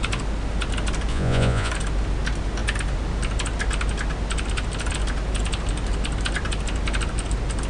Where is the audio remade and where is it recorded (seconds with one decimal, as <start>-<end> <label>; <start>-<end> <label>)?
0.0-1.1 recorded; 1.1-1.7 remade; 1.7-7.7 recorded

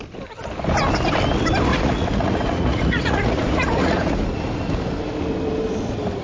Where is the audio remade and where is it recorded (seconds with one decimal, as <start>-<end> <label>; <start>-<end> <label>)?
0.0-1.7 recorded; 1.7-4.4 remade; 4.4-6.2 recorded

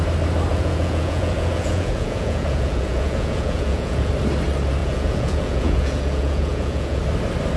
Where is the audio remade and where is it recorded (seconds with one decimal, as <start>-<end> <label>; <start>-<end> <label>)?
0.0-0.5 recorded; 0.5-4.1 remade; 4.1-4.8 recorded; 4.8-7.0 remade; 7.0-7.6 recorded

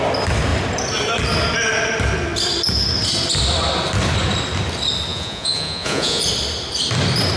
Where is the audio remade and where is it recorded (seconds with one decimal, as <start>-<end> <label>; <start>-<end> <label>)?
0.0-5.1 recorded; 5.1-6.2 remade; 6.2-7.4 recorded

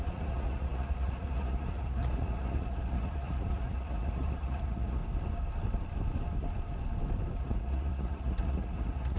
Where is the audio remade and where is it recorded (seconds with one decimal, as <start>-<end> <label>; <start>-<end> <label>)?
0.0-5.0 remade; 5.0-7.4 recorded; 7.4-9.2 remade

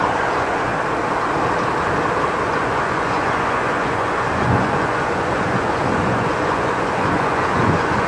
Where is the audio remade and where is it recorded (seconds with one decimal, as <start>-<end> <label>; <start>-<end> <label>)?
0.0-0.7 remade; 0.7-2.4 recorded; 2.4-8.1 remade

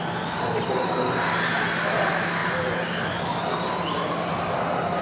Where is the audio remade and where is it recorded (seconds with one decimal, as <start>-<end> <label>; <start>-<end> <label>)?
0.0-5.0 recorded

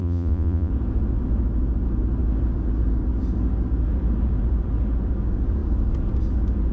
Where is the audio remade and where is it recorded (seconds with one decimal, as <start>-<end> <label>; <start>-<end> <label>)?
0.0-0.7 remade; 0.7-6.7 recorded